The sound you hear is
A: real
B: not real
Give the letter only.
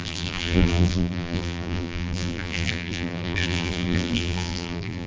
B